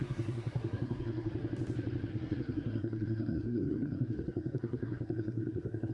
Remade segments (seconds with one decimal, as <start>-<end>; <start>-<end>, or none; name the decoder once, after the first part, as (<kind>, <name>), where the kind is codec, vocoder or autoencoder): 0.0-1.3 (codec, SNAC); 2.1-5.9